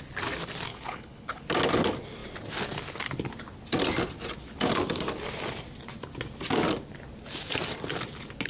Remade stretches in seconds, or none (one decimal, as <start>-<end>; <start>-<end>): 0.7-1.4